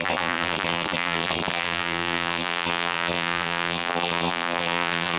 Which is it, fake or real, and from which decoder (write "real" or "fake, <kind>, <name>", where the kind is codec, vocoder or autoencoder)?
fake, vocoder, BigVGAN v2